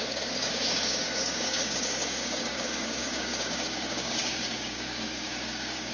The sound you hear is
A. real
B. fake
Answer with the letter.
B